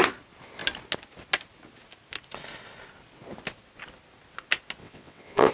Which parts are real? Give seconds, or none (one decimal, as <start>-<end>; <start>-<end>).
0.0-4.8

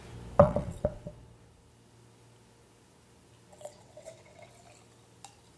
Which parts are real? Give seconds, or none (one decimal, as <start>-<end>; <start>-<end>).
0.0-0.4; 1.0-3.5; 4.5-5.6

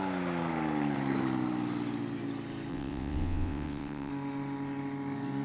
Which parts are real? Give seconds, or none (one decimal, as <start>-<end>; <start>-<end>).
0.0-2.7; 4.1-5.4

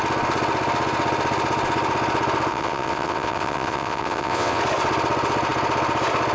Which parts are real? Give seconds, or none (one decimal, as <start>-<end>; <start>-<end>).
0.0-2.5; 4.6-6.3